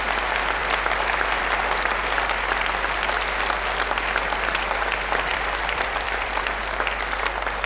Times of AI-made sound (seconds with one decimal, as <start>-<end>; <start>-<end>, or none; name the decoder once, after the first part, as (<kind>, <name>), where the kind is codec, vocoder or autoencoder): 5.3-6.4 (vocoder, BigVGAN v2)